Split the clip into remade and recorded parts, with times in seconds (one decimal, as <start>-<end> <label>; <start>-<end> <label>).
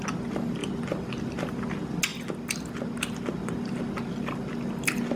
0.0-5.2 recorded